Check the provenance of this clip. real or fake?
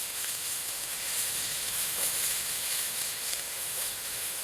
fake